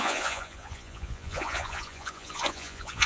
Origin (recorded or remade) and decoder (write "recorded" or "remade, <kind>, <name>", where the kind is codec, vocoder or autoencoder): remade, vocoder, Vocos